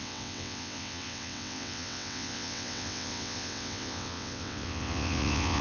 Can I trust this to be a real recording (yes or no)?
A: no